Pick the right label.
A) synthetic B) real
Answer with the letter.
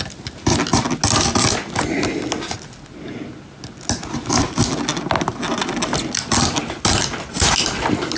B